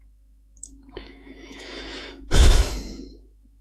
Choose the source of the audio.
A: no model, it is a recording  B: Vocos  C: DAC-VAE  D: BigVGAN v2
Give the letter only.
C